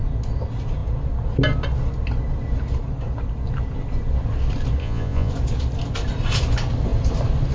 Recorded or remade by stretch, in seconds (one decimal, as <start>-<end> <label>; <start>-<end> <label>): 0.0-4.8 recorded; 4.8-5.3 remade; 5.3-7.5 recorded